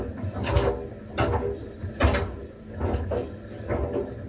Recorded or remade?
recorded